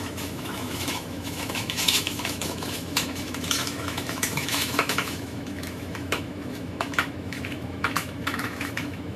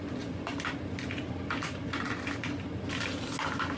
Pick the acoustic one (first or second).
second